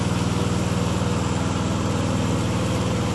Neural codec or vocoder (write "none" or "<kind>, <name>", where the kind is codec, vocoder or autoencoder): none